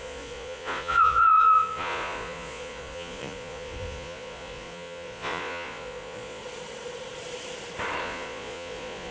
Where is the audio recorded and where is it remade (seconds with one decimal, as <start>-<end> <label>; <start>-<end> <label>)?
0.0-6.4 remade; 6.4-8.0 recorded; 8.0-9.1 remade